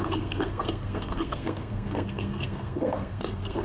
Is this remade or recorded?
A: remade